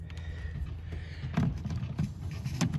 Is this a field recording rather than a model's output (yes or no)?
yes